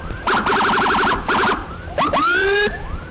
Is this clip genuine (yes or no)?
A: no